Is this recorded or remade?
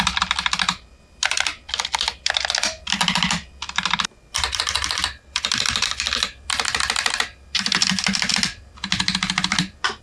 remade